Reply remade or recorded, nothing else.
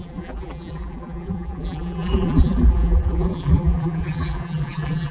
remade